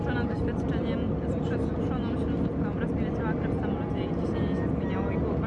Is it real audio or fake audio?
real